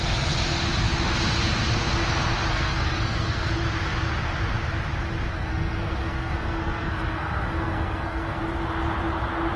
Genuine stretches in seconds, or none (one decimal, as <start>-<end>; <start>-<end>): 0.0-2.5; 3.5-5.3; 8.4-9.6